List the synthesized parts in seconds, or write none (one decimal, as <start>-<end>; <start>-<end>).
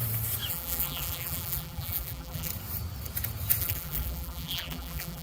0.5-2.5; 3.6-5.2